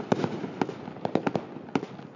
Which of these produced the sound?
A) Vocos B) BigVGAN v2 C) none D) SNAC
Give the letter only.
C